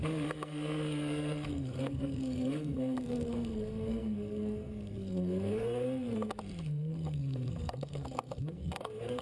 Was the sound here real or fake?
fake